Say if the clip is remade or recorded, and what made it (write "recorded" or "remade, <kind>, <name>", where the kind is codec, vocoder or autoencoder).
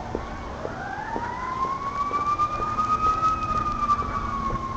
recorded